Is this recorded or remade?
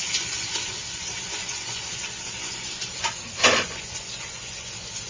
remade